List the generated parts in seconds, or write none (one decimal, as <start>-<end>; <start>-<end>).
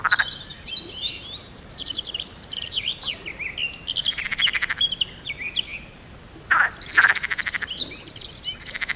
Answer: 0.5-2.9